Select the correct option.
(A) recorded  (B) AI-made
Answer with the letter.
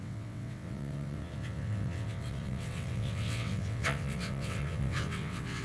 B